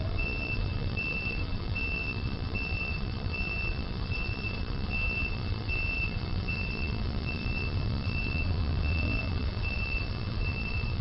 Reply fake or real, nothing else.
fake